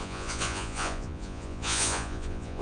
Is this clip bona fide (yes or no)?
no